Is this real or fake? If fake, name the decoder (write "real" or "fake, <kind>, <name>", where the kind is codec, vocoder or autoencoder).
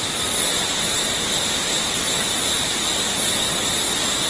real